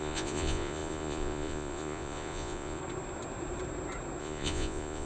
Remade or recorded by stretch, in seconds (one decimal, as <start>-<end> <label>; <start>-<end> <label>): 0.0-2.8 remade; 2.8-4.2 recorded; 4.2-5.1 remade